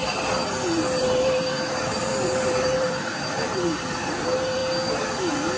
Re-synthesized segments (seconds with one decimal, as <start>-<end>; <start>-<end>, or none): 1.0-4.6